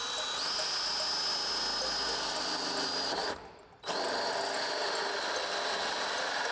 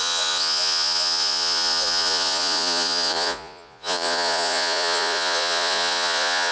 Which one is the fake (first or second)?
second